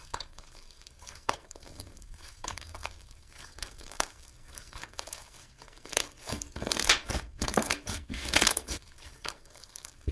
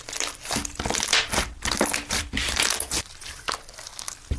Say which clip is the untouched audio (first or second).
second